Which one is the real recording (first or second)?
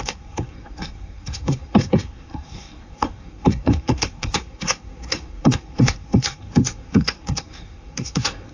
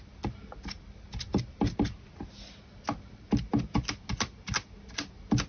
second